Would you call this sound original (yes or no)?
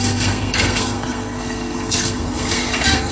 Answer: no